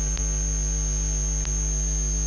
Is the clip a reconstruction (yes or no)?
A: no